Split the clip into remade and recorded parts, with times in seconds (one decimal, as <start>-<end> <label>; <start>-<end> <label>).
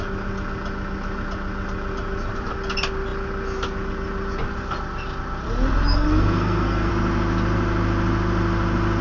0.0-5.9 recorded; 5.9-6.9 remade; 6.9-9.0 recorded